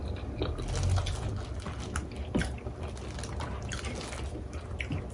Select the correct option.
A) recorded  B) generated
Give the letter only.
A